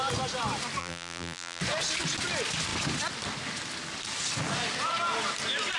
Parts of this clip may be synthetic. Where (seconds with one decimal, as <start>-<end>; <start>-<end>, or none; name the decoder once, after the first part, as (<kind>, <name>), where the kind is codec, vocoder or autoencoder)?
0.8-1.6 (vocoder, BigVGAN v2)